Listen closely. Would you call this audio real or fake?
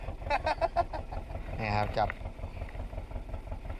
real